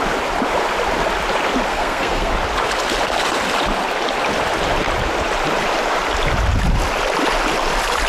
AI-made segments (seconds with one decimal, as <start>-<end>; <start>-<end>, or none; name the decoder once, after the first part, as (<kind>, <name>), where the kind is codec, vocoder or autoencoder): 1.7-2.3 (codec, SNAC)